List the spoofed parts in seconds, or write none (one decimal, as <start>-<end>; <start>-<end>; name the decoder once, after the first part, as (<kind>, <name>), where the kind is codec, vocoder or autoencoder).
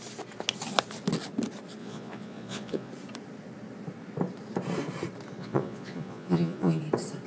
1.8-2.9 (vocoder, Vocos); 5.4-6.8